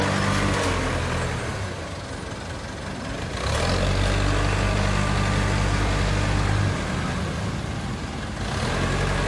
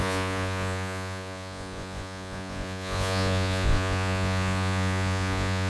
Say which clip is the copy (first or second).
second